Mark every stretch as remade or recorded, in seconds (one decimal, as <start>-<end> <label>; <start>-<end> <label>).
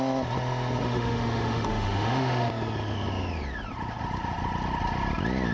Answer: 0.0-0.8 recorded; 0.8-2.5 remade; 2.5-5.5 recorded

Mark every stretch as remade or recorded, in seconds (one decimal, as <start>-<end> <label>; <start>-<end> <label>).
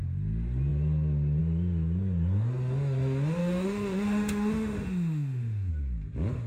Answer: 0.0-3.4 recorded; 3.4-5.7 remade; 5.7-6.5 recorded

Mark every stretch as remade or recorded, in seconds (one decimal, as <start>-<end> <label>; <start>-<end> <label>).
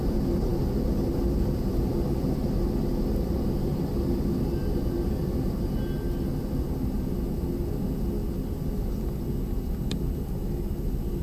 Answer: 0.0-11.2 recorded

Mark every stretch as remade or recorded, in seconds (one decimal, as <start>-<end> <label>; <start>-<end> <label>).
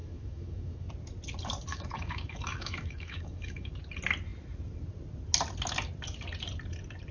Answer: 0.0-0.9 remade; 0.9-1.7 recorded; 1.7-3.7 remade; 3.7-7.1 recorded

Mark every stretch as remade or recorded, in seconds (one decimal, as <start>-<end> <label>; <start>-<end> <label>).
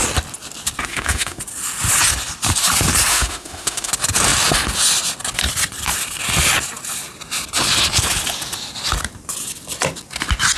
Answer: 0.0-0.9 recorded; 0.9-1.4 remade; 1.4-3.1 recorded; 3.1-3.9 remade; 3.9-10.6 recorded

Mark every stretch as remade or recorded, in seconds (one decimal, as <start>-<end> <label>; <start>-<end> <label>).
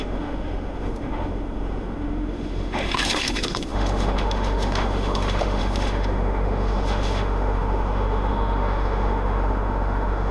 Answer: 0.0-10.3 remade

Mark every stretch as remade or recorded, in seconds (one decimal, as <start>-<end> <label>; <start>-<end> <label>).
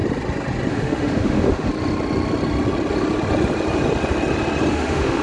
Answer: 0.0-0.7 recorded; 0.7-1.7 remade; 1.7-4.7 recorded; 4.7-5.2 remade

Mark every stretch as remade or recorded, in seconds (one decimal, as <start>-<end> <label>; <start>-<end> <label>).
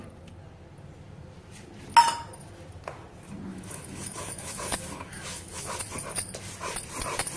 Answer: 0.0-3.5 recorded; 3.5-5.7 remade; 5.7-7.4 recorded